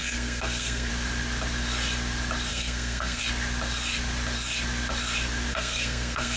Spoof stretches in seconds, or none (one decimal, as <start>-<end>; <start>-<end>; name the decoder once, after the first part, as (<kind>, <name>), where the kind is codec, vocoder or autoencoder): 0.0-0.9 (codec, SNAC); 2.5-3.2; 5.5-6.4